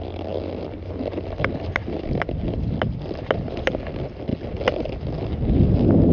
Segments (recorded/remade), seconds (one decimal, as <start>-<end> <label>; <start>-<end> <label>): 0.0-6.1 recorded